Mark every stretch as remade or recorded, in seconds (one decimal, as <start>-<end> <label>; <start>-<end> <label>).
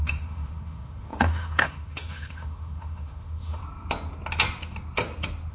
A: 0.0-3.6 remade; 3.6-5.5 recorded